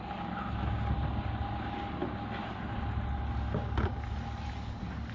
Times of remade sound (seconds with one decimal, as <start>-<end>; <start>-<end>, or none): none